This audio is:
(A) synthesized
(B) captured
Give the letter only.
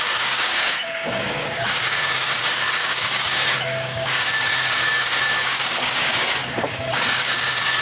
A